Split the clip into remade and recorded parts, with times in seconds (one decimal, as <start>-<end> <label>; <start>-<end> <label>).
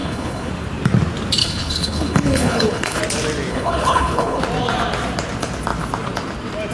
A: 0.0-0.5 remade; 0.5-1.4 recorded; 1.4-3.0 remade; 3.0-3.5 recorded; 3.5-4.4 remade; 4.4-6.7 recorded